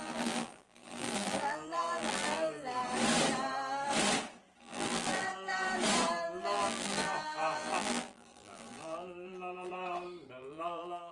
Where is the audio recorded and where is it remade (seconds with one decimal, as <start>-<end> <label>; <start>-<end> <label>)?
0.0-2.8 remade; 2.8-4.6 recorded; 4.6-5.3 remade; 5.3-6.3 recorded; 6.3-9.7 remade; 9.7-10.4 recorded; 10.4-11.1 remade